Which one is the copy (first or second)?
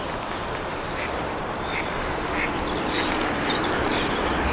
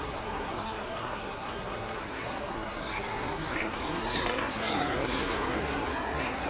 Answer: second